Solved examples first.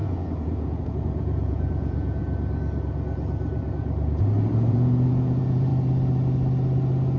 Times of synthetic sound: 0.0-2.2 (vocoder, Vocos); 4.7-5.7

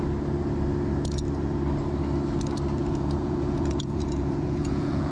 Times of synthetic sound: 2.8-5.1 (vocoder, Vocos)